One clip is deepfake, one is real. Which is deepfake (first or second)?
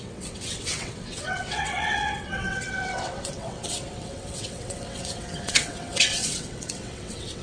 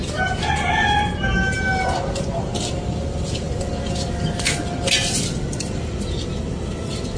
first